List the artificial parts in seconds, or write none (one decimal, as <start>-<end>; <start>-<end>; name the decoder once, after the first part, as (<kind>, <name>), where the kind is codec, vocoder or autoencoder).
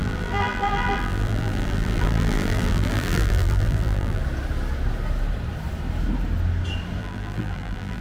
0.0-4.2 (vocoder, BigVGAN v2); 7.0-8.0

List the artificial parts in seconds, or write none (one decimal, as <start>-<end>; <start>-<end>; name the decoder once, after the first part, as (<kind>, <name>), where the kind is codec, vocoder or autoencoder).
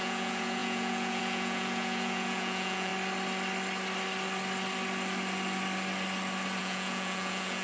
0.0-2.9 (vocoder, Vocos); 6.6-7.6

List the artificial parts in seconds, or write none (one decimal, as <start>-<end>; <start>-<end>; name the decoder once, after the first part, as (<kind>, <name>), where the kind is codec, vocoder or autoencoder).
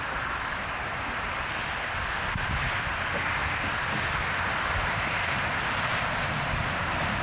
0.0-3.4 (vocoder, BigVGAN v2); 4.3-7.2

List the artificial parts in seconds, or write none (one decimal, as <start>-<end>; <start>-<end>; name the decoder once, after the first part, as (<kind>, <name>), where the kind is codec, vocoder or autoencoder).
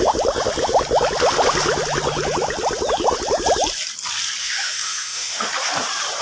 4.4-5.5 (autoencoder, DAC-VAE)